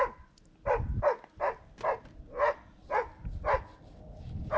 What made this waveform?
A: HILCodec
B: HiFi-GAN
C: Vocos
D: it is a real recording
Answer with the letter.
D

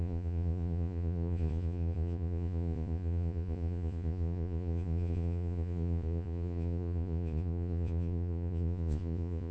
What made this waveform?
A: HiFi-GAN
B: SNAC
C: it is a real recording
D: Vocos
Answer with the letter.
D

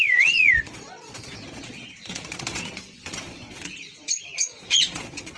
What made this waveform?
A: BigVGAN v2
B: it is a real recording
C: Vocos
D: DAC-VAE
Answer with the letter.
C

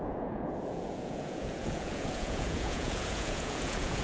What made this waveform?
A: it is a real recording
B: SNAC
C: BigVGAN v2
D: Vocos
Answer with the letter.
D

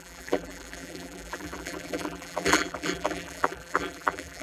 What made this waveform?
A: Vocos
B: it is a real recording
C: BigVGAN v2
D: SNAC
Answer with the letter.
C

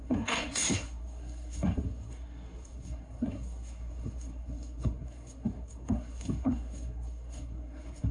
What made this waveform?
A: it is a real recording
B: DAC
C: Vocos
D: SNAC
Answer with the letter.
D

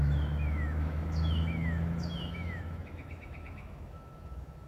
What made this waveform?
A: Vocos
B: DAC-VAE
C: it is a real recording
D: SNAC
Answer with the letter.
B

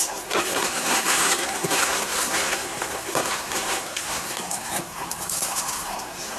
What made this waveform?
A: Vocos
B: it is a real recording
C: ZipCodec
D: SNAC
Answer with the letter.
D